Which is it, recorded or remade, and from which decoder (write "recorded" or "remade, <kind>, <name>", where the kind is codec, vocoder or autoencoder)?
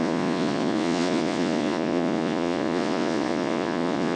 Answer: remade, vocoder, Vocos